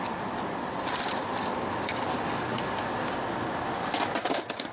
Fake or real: real